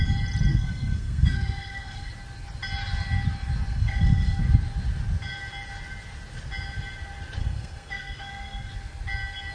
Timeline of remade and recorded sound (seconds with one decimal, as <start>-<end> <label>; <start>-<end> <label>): 0.0-0.5 recorded; 0.5-2.1 remade; 2.1-3.7 recorded; 3.7-4.4 remade; 4.4-7.4 recorded; 7.4-8.7 remade; 8.7-9.5 recorded